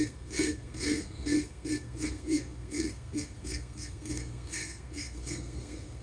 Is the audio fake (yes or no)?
yes